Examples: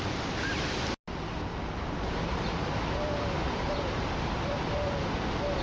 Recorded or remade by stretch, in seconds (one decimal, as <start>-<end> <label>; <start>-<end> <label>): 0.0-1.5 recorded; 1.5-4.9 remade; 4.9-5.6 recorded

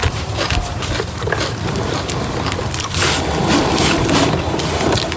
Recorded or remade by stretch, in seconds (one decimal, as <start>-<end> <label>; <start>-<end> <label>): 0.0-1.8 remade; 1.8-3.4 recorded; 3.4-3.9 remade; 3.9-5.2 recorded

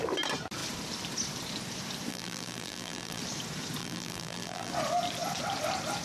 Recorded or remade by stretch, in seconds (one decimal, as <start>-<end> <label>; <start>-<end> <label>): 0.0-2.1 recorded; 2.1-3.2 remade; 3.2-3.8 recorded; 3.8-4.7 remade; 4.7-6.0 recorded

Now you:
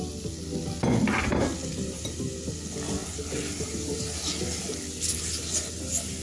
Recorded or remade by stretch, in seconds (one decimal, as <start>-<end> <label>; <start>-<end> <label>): 0.0-1.7 recorded; 1.7-2.5 remade; 2.5-3.0 recorded; 3.0-4.0 remade; 4.0-6.2 recorded

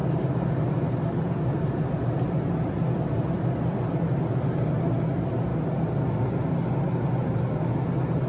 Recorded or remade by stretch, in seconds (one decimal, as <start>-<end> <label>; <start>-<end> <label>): 0.0-4.2 remade; 4.2-5.5 recorded; 5.5-6.5 remade; 6.5-8.3 recorded

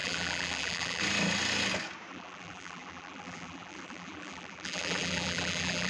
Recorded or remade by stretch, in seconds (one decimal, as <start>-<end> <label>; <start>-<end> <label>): 0.0-1.0 remade; 1.0-2.1 recorded; 2.1-5.9 remade

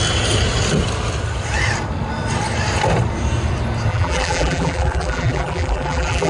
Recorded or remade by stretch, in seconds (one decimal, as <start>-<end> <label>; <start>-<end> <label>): 0.0-3.9 recorded; 3.9-6.3 remade